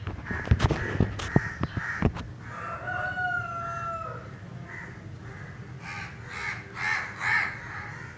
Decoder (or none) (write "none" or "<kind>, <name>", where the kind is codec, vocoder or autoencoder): none